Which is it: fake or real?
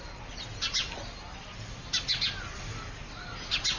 real